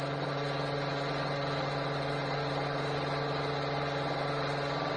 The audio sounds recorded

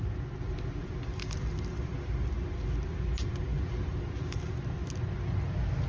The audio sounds recorded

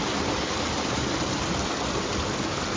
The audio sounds recorded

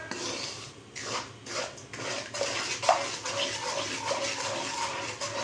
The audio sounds recorded